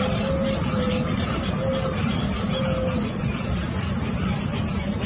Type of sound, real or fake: real